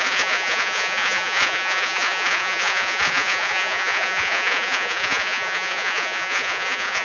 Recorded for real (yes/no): no